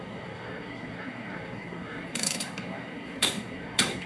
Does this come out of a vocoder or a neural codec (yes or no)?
yes